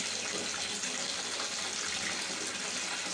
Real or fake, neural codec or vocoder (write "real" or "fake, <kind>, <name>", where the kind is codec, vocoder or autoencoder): real